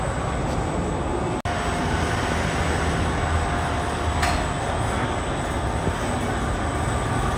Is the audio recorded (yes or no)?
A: yes